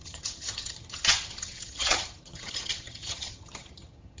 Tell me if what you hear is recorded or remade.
remade